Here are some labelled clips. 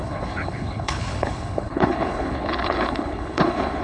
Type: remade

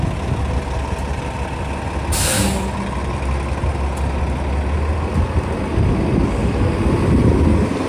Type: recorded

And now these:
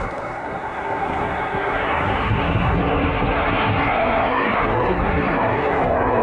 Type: remade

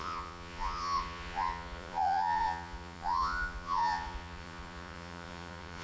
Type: remade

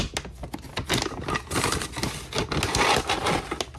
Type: recorded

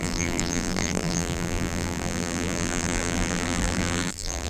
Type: remade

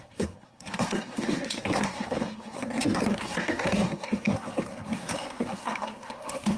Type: remade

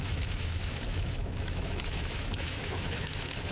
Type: remade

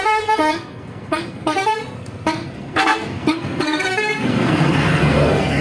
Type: remade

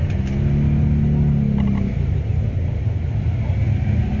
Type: recorded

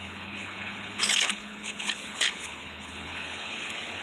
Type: remade